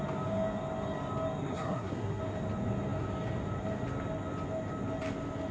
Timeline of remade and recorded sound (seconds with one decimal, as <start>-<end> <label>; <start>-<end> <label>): 0.0-1.4 recorded; 1.4-2.2 remade; 2.2-5.5 recorded